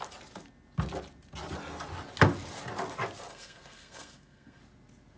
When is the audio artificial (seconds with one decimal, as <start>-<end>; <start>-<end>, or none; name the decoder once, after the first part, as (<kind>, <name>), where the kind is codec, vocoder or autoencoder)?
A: 3.3-4.6 (codec, SNAC)